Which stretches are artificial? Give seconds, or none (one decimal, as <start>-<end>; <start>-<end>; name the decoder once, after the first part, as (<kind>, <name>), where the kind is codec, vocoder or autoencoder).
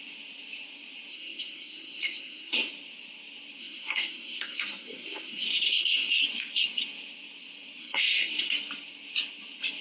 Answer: 1.1-2.7 (codec, SNAC); 3.6-6.2; 7.8-8.5